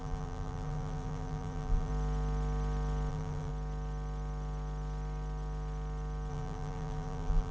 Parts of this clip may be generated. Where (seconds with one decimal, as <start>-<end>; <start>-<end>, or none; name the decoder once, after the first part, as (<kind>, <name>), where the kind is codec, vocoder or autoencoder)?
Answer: 0.0-1.9 (vocoder, BigVGAN v2); 3.1-3.5; 6.3-7.5